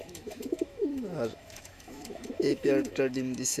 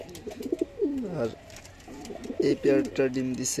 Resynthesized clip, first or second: first